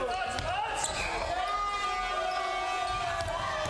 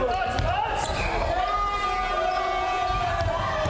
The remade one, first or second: second